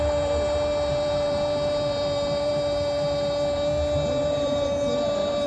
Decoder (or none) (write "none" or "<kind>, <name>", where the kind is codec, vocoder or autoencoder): vocoder, BigVGAN v2